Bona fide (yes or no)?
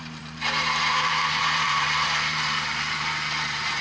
no